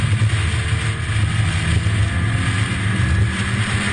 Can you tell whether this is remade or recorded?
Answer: recorded